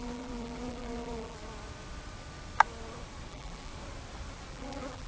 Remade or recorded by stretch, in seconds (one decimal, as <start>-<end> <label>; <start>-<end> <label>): 0.0-1.4 remade; 1.4-3.3 recorded; 3.3-3.7 remade; 3.7-4.5 recorded; 4.5-5.1 remade